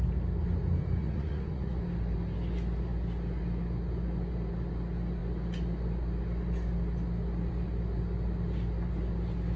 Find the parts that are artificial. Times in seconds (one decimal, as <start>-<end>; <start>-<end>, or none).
1.0-1.8